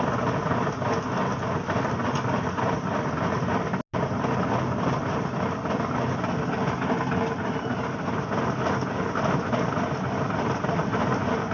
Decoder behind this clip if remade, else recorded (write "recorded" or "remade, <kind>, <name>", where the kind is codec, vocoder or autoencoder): recorded